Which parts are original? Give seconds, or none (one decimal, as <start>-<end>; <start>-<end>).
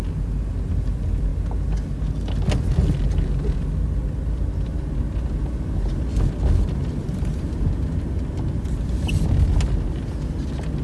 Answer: 0.0-10.8